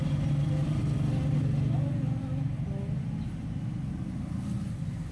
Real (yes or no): yes